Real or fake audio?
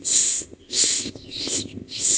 fake